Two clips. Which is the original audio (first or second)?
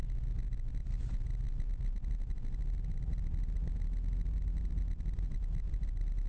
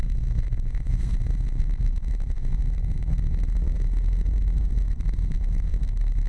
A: first